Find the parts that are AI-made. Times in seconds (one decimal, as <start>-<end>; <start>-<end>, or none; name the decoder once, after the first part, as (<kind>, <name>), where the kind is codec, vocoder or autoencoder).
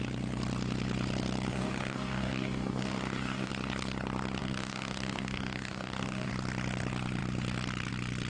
1.5-3.5 (codec, DAC); 4.4-6.3